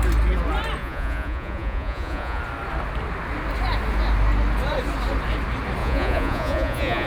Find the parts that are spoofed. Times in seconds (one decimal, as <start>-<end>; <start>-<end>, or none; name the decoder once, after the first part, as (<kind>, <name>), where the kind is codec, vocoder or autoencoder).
0.8-2.4 (vocoder, Vocos); 5.8-7.1